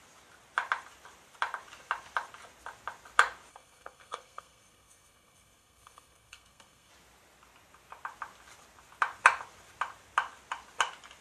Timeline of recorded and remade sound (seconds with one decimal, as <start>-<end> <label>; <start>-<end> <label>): 0.0-3.5 recorded; 3.5-6.9 remade; 6.9-11.2 recorded